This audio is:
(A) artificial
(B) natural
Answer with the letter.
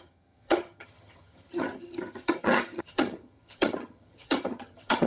A